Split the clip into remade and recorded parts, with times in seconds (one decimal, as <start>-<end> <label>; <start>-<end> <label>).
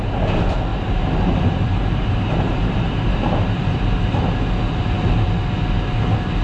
0.0-0.7 recorded; 0.7-3.7 remade; 3.7-6.4 recorded